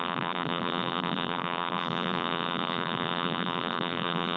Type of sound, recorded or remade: remade